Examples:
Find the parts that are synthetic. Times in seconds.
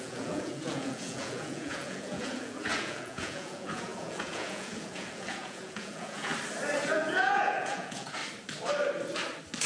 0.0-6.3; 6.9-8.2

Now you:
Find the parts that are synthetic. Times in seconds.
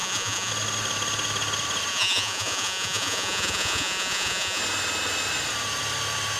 0.0-0.5; 1.9-4.6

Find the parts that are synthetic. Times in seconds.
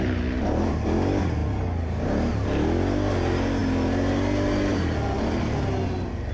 none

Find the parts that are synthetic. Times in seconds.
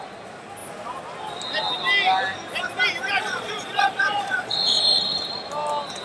3.2-4.8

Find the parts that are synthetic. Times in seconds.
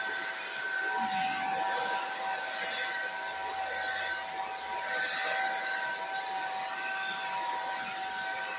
none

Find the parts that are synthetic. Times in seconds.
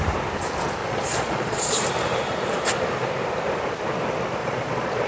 0.8-1.8; 4.4-5.1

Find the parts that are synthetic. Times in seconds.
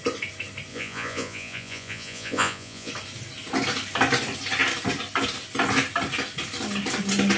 0.7-2.9